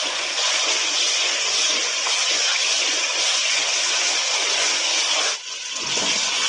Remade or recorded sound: remade